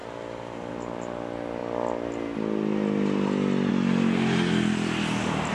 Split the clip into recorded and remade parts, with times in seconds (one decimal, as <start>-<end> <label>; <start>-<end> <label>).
0.0-5.5 recorded